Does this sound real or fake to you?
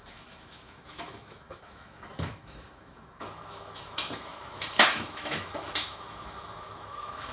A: fake